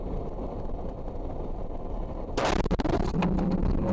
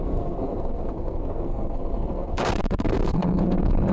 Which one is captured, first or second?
first